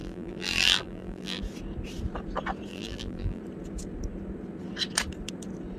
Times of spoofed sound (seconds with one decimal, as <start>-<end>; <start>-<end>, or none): 0.0-1.4; 2.7-3.4